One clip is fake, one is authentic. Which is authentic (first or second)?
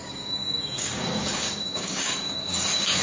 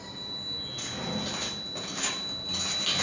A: second